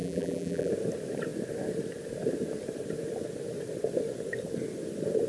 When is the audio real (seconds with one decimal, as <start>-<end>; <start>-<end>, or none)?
0.7-5.3